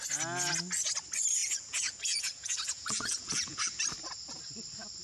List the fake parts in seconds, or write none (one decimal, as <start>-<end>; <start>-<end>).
1.4-3.8